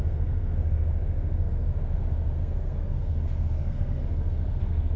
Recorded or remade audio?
remade